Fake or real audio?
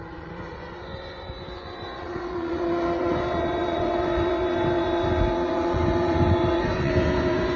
fake